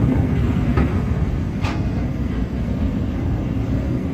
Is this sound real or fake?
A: fake